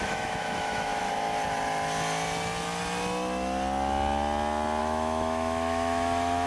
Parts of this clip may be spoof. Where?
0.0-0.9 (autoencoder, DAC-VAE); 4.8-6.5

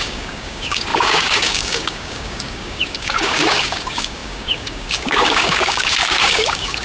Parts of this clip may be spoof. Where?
0.0-6.8 (codec, DAC)